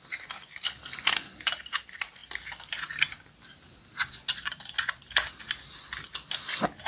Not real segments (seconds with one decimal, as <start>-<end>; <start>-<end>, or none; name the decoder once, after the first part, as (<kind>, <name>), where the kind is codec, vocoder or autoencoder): none